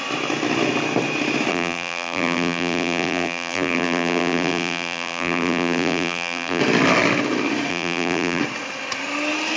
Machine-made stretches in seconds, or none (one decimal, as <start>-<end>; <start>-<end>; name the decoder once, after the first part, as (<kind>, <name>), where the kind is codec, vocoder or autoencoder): 1.5-6.6 (vocoder, BigVGAN v2); 7.7-8.4